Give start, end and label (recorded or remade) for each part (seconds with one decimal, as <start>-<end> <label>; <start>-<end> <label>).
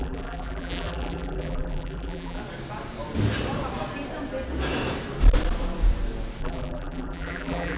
0.0-2.4 remade; 2.4-6.4 recorded; 6.4-7.8 remade